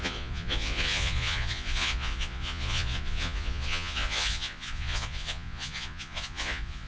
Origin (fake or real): fake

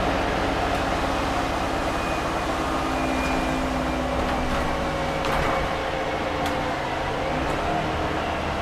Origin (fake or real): real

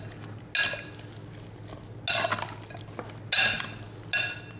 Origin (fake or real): real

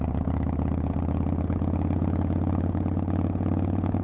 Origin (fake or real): fake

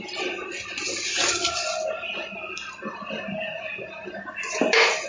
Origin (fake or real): real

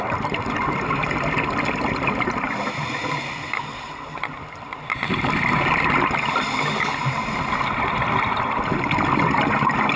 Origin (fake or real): real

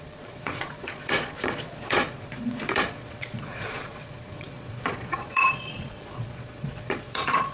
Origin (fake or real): fake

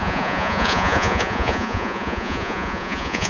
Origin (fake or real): fake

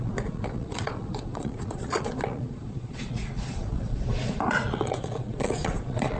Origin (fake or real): fake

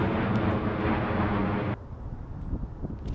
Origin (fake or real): real